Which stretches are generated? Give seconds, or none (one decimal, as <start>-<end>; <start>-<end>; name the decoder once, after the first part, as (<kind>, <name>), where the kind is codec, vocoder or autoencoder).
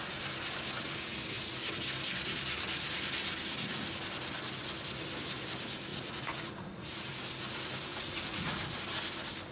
5.9-7.0 (vocoder, Vocos); 7.9-8.6